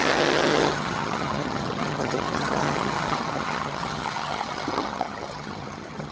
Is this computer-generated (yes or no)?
yes